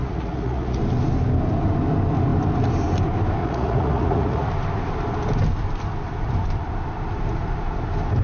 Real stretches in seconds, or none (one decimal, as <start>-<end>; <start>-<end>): 0.8-3.4; 4.5-8.2